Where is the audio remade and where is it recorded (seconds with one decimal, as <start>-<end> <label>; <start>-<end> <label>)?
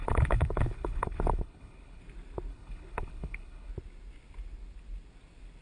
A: 0.0-2.0 remade; 2.0-2.5 recorded; 2.5-3.7 remade; 3.7-5.6 recorded